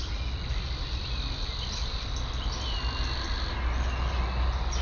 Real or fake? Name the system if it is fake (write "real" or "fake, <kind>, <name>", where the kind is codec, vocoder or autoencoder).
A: real